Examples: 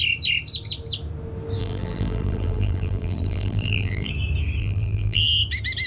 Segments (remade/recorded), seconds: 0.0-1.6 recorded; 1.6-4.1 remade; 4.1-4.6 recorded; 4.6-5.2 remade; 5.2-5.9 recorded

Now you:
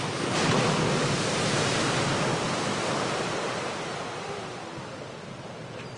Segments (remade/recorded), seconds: 0.0-2.1 recorded; 2.1-6.0 remade

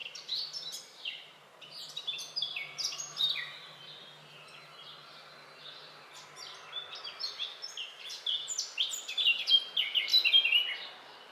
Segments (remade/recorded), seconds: 0.0-3.8 remade; 3.8-11.3 recorded

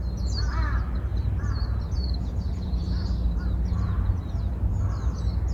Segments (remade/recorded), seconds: 0.0-1.1 recorded; 1.1-4.4 remade; 4.4-5.5 recorded

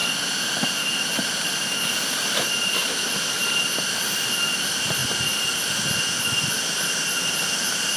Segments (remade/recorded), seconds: 0.0-1.9 recorded; 1.9-2.8 remade; 2.8-3.3 recorded; 3.3-5.0 remade; 5.0-7.3 recorded; 7.3-8.0 remade